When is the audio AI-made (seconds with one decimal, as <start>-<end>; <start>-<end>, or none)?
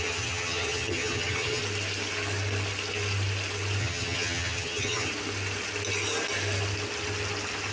0.0-1.6; 3.8-5.1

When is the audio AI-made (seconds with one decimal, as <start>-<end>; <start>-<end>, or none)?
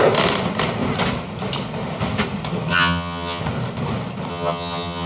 2.7-3.4; 4.3-5.1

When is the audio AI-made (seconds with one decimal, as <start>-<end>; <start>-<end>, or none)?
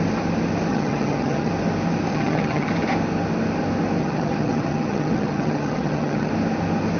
0.7-1.5; 2.1-2.7; 4.0-6.3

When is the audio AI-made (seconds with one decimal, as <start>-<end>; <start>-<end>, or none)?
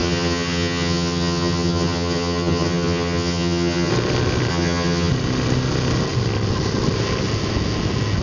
0.0-3.9; 4.5-5.1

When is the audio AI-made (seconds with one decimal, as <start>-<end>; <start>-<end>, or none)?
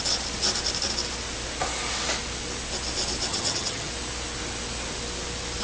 3.3-3.9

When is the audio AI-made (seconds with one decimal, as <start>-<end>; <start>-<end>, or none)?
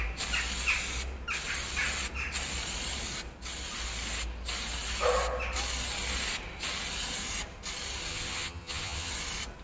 8.1-9.1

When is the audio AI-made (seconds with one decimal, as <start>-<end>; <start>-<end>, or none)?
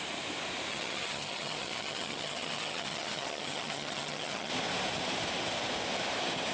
0.7-4.5